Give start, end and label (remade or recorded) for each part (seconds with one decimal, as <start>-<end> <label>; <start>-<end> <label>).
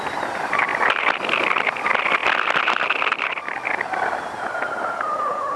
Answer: 0.0-0.7 remade; 0.7-1.6 recorded; 1.6-2.2 remade; 2.2-5.6 recorded